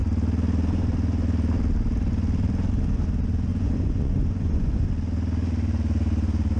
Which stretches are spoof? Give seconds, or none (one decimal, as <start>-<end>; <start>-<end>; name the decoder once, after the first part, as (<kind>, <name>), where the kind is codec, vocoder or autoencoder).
3.5-4.7 (vocoder, Vocos)